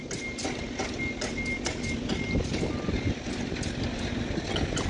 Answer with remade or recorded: recorded